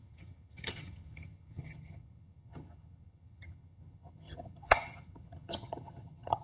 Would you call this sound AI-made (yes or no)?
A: yes